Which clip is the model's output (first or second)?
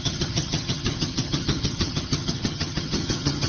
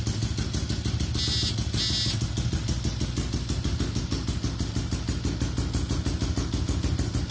first